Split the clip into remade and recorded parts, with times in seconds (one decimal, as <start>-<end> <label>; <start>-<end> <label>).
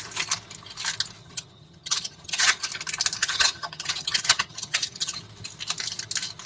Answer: 0.0-1.2 recorded; 1.2-2.7 remade; 2.7-3.2 recorded; 3.2-5.2 remade; 5.2-6.5 recorded